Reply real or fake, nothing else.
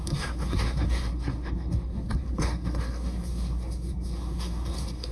fake